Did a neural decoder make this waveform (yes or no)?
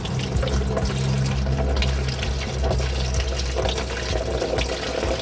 no